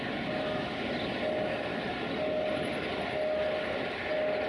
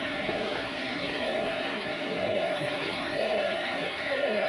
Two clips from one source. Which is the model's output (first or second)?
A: second